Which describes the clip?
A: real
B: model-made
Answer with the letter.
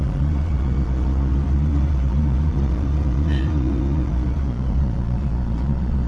B